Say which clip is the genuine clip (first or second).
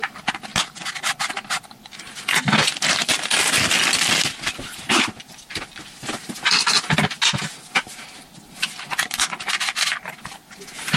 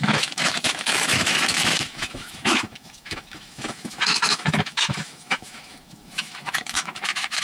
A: first